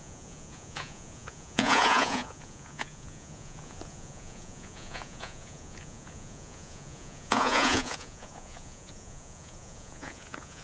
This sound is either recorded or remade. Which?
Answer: remade